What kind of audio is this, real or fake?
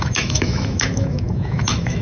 fake